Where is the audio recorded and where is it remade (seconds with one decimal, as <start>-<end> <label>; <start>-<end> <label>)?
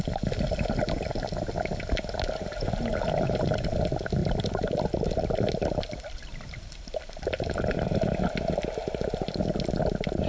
0.0-4.2 recorded; 4.2-7.2 remade; 7.2-10.3 recorded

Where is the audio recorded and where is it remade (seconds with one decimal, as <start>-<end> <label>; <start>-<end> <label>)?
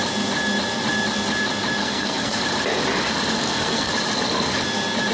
0.0-1.8 recorded; 1.8-2.4 remade; 2.4-3.4 recorded; 3.4-3.9 remade; 3.9-5.1 recorded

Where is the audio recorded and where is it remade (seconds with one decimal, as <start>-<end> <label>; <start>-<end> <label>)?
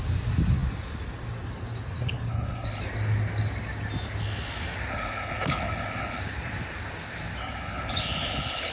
0.0-2.3 recorded; 2.3-2.8 remade; 2.8-4.9 recorded; 4.9-6.2 remade; 6.2-7.4 recorded; 7.4-8.7 remade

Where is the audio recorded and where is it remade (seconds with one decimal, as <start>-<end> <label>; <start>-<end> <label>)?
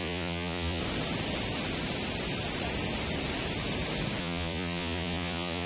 0.0-0.8 remade; 0.8-4.2 recorded; 4.2-5.7 remade